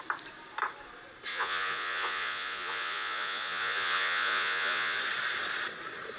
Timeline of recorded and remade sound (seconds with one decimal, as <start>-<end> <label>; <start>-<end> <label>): 0.0-1.3 recorded; 1.3-5.0 remade; 5.0-6.2 recorded